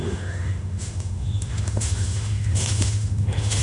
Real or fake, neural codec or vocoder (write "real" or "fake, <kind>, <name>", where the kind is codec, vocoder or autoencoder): fake, autoencoder, DAC-VAE